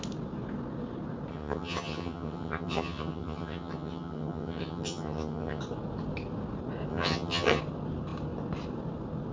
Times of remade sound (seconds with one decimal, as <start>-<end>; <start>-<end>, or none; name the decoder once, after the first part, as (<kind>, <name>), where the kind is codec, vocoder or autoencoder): 1.3-5.6 (vocoder, HiFi-GAN); 6.9-7.6